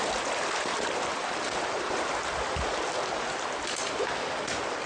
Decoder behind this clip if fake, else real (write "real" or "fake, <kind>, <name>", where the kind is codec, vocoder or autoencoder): real